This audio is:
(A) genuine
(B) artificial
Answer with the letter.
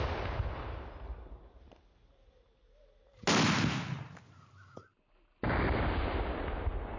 A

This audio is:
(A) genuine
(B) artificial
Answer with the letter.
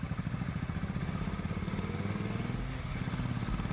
A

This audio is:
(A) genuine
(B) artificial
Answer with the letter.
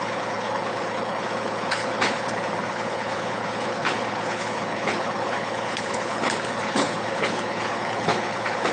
B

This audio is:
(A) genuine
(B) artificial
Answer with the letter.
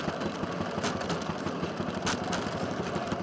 A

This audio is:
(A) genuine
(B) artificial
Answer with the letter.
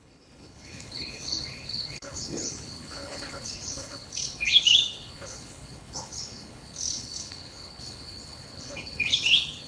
B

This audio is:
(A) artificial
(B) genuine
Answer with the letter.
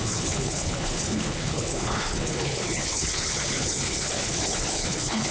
A